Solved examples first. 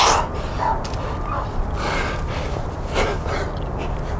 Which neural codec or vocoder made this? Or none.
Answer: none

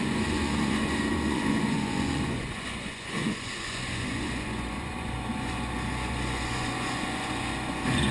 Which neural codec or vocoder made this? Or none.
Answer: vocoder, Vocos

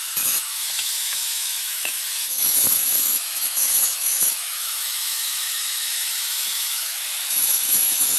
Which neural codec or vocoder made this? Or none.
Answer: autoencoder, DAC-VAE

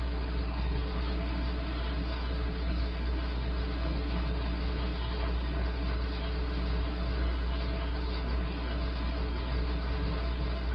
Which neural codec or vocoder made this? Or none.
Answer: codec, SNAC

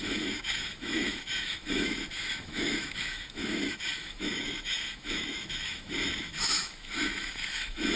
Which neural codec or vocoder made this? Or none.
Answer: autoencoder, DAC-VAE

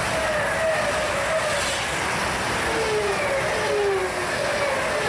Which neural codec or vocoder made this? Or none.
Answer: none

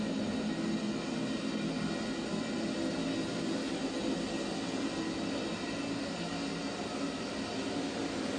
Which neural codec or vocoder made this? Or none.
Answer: none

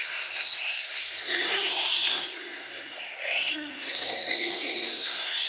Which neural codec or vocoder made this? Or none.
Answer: codec, SNAC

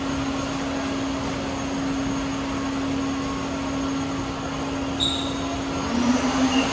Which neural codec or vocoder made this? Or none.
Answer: none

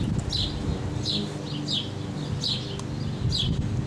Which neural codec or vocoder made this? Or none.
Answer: none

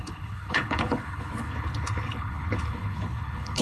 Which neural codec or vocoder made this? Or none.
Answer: codec, HILCodec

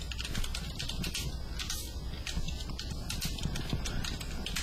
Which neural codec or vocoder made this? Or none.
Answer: none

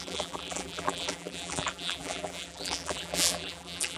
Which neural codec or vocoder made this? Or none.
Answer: vocoder, BigVGAN v2